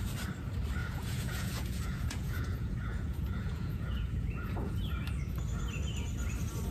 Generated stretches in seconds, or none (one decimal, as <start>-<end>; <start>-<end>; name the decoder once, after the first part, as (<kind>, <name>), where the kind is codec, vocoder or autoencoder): 0.8-4.8 (vocoder, Vocos)

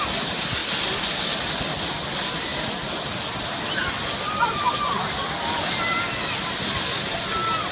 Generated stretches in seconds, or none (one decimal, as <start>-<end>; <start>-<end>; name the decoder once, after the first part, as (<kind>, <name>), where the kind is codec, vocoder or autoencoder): none

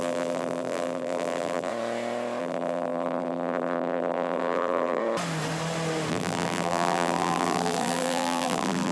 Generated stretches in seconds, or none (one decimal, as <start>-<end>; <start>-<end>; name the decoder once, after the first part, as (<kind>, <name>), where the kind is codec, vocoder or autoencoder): 0.0-1.7 (vocoder, BigVGAN v2); 2.4-5.0; 6.1-8.9